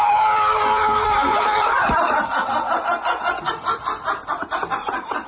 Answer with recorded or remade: remade